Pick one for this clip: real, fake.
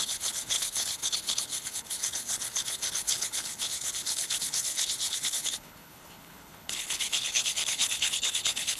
fake